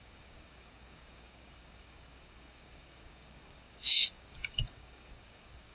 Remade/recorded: remade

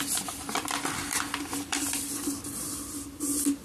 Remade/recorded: remade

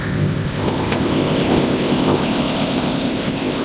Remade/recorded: remade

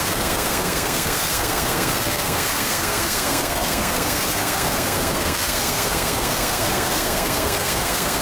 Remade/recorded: remade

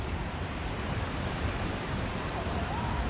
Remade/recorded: remade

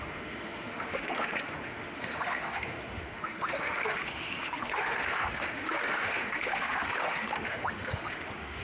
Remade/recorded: remade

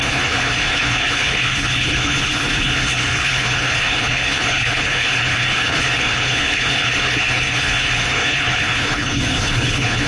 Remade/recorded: remade